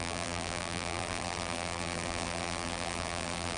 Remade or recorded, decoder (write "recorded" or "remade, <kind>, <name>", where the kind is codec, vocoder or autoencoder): remade, vocoder, BigVGAN v2